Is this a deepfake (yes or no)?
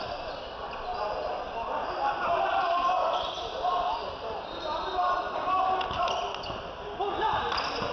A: no